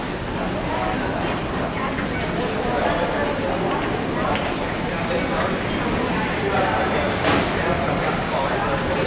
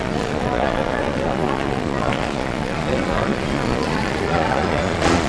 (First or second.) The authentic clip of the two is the first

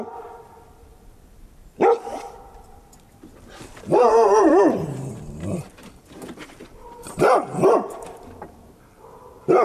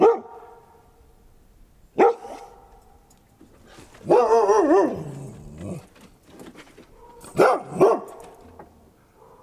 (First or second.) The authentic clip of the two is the second